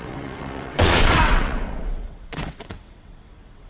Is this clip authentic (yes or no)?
no